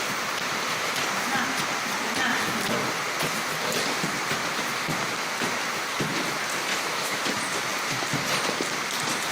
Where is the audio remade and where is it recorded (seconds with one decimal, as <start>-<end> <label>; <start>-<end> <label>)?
0.0-6.7 recorded; 6.7-7.2 remade; 7.2-9.3 recorded